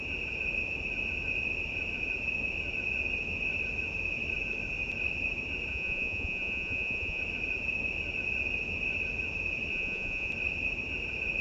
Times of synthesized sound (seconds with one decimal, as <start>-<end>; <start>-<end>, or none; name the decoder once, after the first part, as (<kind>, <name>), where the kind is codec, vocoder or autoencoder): 5.7-7.2 (vocoder, Vocos); 9.7-10.3